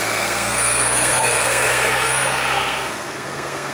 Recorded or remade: remade